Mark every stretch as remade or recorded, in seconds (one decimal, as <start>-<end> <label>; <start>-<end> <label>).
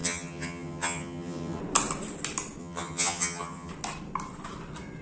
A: 0.0-1.6 remade; 1.6-2.6 recorded; 2.6-3.7 remade; 3.7-5.0 recorded